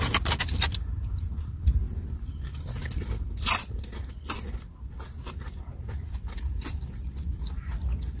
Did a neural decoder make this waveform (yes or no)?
yes